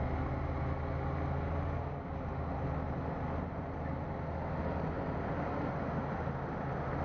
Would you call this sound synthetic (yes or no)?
no